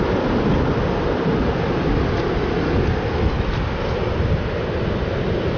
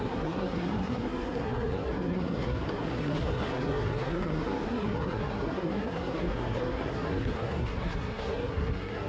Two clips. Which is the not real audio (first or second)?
second